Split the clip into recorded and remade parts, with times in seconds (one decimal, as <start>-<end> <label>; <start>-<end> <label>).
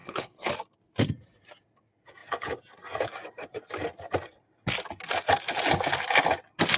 0.0-0.5 remade; 0.5-6.8 recorded